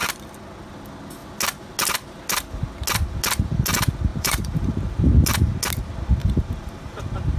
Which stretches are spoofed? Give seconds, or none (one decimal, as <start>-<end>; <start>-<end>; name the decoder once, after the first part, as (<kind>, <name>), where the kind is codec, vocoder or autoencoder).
4.1-4.8 (vocoder, BigVGAN v2); 6.2-7.0